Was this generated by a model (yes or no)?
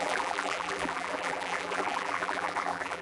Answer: yes